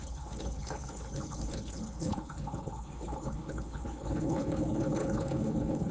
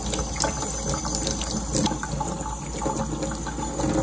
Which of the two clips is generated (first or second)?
first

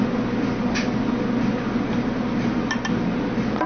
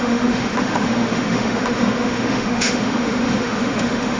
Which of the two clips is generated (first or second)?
second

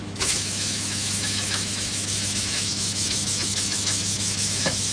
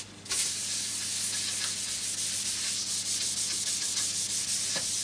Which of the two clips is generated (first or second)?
first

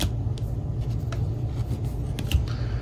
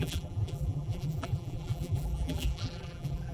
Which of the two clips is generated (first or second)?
second